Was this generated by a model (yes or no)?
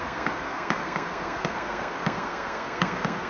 yes